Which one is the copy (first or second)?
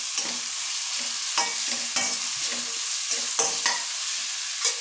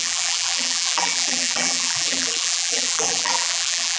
second